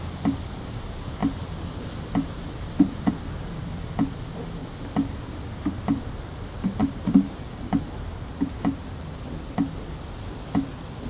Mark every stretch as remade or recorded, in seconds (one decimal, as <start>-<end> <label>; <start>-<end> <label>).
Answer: 0.0-6.8 recorded; 6.8-7.8 remade; 7.8-11.1 recorded